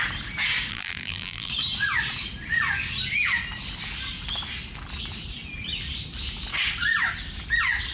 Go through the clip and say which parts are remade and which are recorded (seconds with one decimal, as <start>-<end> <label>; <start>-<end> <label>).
0.0-0.7 recorded; 0.7-1.5 remade; 1.5-7.9 recorded